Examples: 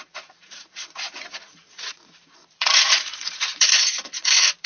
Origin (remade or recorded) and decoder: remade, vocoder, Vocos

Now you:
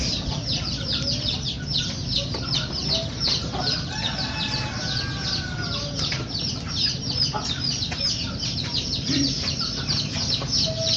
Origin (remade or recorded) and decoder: recorded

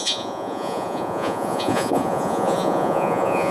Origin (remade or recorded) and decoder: remade, vocoder, Vocos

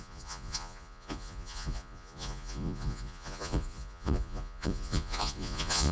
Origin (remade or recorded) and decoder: remade, vocoder, Vocos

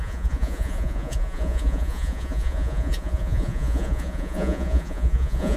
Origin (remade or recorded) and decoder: remade, vocoder, Vocos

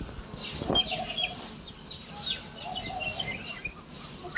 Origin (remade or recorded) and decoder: recorded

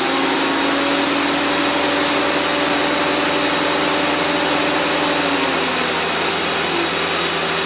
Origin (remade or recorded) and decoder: recorded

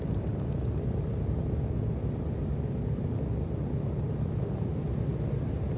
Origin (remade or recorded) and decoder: recorded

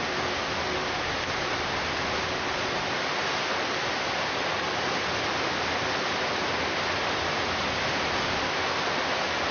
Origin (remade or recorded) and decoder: recorded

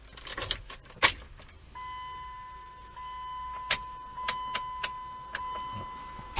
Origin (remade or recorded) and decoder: recorded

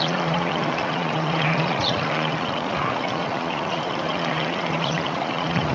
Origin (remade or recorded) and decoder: remade, vocoder, Vocos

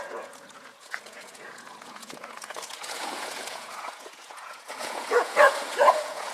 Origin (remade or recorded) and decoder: remade, vocoder, Vocos